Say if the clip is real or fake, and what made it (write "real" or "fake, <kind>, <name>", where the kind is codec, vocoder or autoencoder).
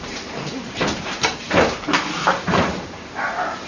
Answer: fake, vocoder, BigVGAN v2